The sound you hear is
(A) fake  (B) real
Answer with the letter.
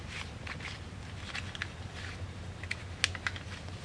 B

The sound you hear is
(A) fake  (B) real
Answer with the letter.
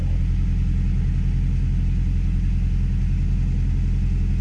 B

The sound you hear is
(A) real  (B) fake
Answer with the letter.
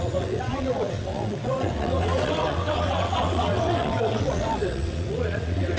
B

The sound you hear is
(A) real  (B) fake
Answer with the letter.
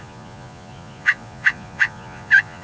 B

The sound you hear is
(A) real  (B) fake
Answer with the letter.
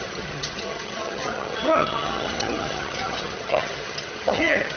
B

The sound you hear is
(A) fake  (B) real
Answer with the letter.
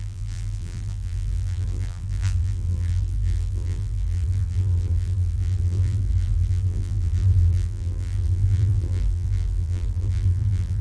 A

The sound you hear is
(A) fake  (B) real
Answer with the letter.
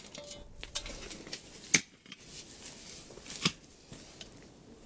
B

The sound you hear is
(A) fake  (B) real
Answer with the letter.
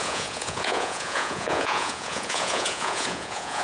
A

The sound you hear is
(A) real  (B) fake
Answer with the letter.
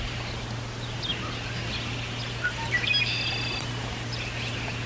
A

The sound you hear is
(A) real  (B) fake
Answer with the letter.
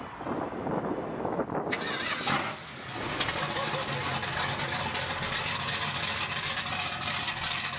A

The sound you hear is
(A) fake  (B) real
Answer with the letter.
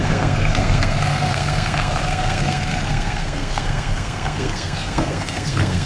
A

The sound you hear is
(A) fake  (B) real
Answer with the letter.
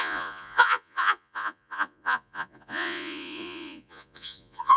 A